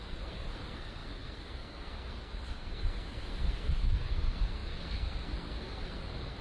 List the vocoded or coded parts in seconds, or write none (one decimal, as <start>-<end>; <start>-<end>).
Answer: 0.0-6.4